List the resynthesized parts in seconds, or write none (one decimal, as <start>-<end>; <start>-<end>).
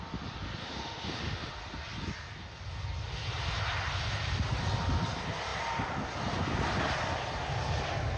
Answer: 0.6-1.5